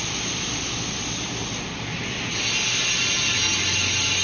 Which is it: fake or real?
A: real